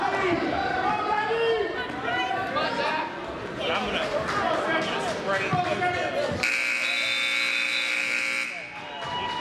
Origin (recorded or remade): recorded